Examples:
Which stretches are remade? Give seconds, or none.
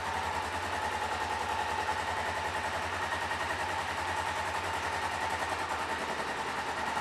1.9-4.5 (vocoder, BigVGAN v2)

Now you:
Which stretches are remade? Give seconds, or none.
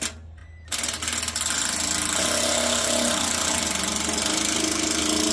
none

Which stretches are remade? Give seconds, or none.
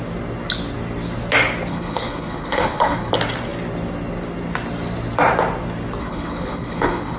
1.7-3.1 (codec, HILCodec); 6.0-7.2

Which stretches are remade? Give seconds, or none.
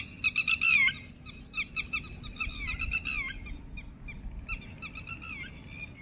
none